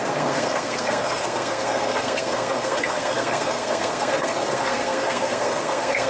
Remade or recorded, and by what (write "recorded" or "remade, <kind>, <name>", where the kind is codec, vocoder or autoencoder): remade, codec, SNAC